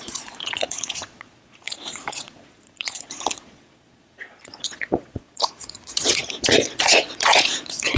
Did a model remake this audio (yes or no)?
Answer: yes